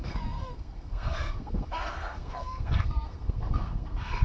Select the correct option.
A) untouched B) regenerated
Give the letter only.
B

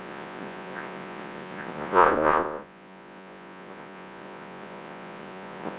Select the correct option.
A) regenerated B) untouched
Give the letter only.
A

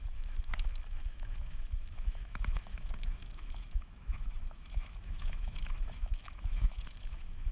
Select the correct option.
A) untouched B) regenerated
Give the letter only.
B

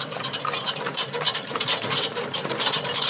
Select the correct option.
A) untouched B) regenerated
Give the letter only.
B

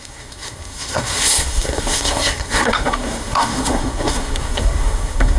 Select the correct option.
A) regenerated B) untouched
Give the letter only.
A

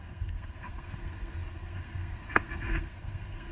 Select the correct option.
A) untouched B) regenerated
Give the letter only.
B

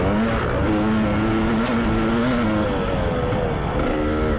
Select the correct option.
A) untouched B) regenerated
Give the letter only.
A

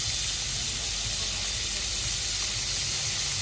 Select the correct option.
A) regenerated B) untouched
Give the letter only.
B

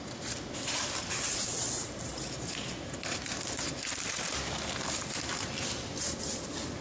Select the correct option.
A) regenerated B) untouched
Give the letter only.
B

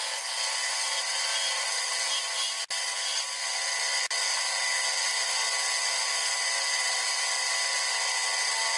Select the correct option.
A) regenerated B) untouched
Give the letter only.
B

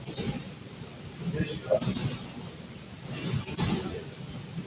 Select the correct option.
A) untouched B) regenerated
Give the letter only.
A